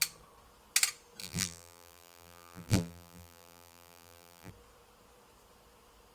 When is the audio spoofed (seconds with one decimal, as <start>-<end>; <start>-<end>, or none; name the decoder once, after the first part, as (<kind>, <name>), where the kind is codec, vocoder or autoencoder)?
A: 1.2-4.5 (vocoder, BigVGAN v2)